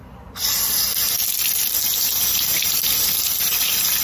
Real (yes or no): yes